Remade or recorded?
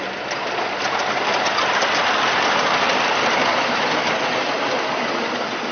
recorded